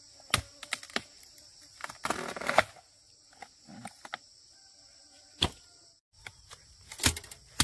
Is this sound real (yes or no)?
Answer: yes